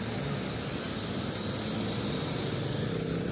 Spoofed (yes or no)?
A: no